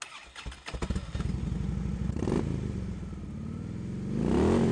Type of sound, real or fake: real